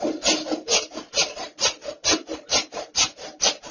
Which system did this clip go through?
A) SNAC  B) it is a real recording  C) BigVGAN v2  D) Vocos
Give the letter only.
B